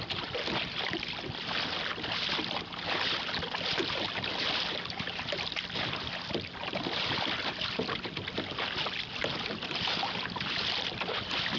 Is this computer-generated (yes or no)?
no